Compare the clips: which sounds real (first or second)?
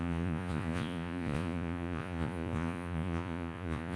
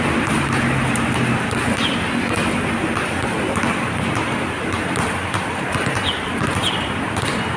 second